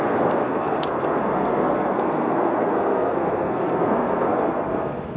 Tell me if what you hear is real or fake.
fake